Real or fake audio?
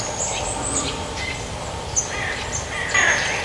real